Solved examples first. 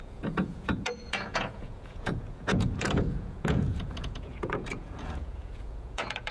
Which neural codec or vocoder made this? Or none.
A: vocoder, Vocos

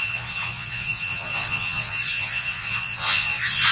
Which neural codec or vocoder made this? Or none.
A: vocoder, Vocos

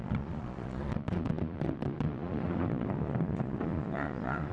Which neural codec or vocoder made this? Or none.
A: vocoder, Vocos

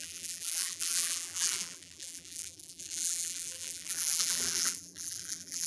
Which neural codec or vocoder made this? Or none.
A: vocoder, BigVGAN v2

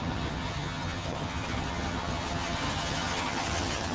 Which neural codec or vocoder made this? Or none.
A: vocoder, HiFi-GAN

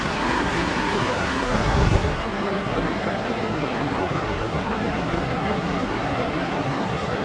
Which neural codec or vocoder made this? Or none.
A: codec, SNAC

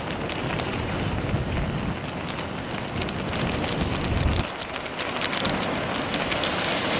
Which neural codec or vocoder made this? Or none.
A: none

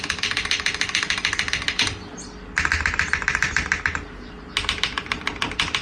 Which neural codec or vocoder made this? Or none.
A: none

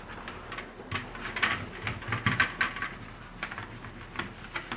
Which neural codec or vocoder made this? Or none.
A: none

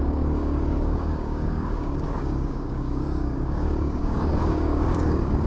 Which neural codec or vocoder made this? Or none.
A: codec, DAC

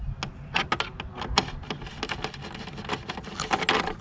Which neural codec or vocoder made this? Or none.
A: none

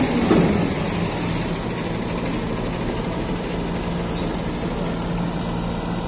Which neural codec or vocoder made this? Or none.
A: none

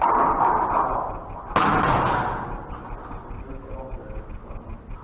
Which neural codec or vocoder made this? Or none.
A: none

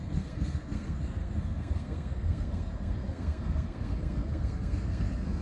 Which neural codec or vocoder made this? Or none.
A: codec, SNAC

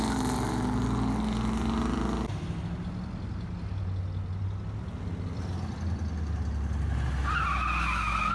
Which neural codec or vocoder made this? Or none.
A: none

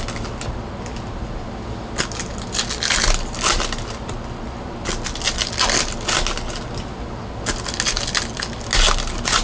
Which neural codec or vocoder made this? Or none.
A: none